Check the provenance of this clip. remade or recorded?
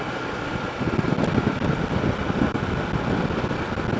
recorded